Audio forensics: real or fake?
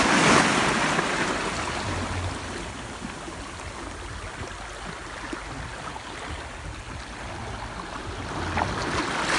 real